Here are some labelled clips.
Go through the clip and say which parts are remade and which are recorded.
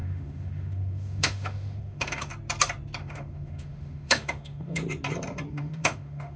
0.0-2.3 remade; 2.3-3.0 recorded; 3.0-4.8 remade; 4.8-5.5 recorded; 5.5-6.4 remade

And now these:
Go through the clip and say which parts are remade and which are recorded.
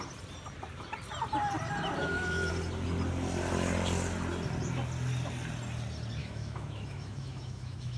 0.0-2.0 recorded; 2.0-2.5 remade; 2.5-6.2 recorded; 6.2-8.0 remade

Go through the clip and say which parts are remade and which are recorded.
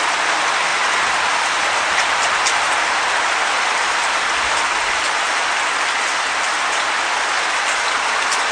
0.0-8.5 recorded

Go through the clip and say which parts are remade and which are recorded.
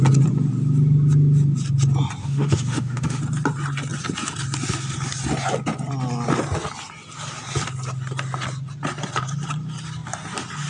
0.0-2.2 recorded; 2.2-3.2 remade; 3.2-10.7 recorded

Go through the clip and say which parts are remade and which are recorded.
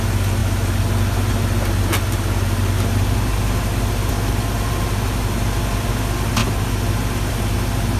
0.0-8.0 recorded